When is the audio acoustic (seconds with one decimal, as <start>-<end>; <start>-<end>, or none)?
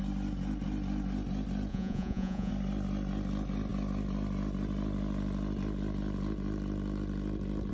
0.0-1.7; 2.5-7.7